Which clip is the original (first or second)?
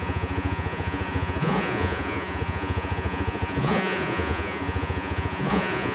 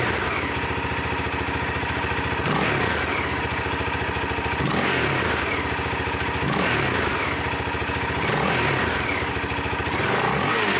second